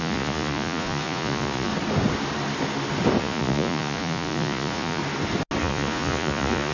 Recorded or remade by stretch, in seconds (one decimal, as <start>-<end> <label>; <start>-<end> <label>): 0.0-1.7 remade; 1.7-3.2 recorded; 3.2-5.0 remade; 5.0-5.6 recorded; 5.6-6.7 remade